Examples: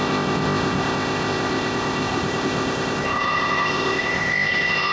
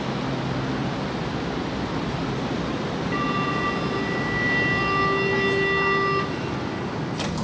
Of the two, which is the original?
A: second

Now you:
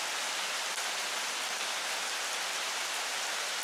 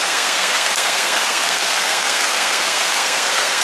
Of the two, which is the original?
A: first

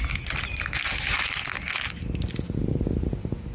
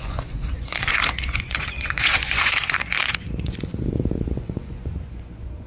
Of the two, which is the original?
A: first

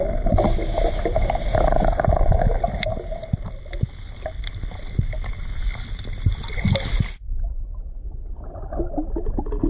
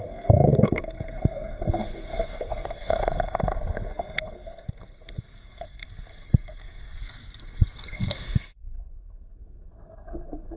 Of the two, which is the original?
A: first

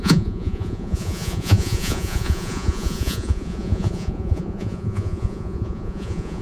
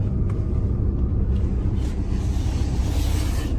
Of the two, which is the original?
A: second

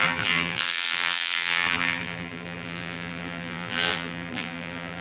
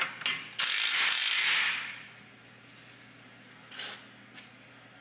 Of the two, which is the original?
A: second